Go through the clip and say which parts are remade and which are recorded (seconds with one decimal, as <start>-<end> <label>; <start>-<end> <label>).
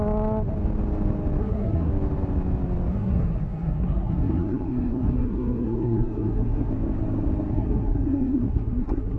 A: 0.0-1.4 recorded; 1.4-1.9 remade; 1.9-2.9 recorded; 2.9-6.7 remade; 6.7-7.5 recorded; 7.5-9.2 remade